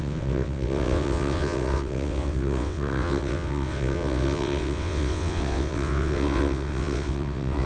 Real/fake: fake